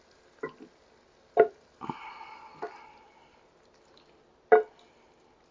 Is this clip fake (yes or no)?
no